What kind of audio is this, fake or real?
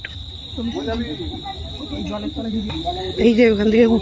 real